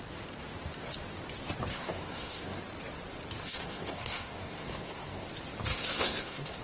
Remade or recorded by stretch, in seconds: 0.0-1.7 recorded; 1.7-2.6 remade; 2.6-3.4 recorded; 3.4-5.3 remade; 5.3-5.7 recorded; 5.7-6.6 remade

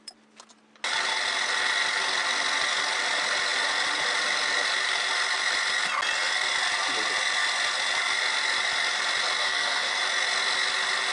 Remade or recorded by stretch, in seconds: 0.0-9.4 recorded; 9.4-10.0 remade; 10.0-11.1 recorded

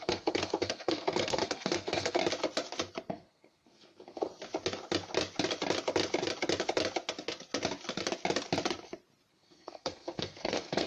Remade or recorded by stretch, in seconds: 0.0-2.2 remade; 2.2-3.1 recorded; 3.1-4.3 remade; 4.3-9.3 recorded; 9.3-10.9 remade

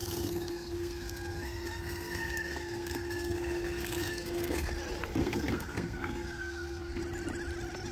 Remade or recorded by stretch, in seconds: 0.0-4.7 remade; 4.7-5.2 recorded; 5.2-7.0 remade; 7.0-7.9 recorded

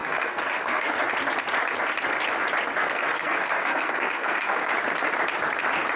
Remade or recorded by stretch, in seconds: 0.0-1.0 remade; 1.0-2.8 recorded; 2.8-4.7 remade; 4.7-6.0 recorded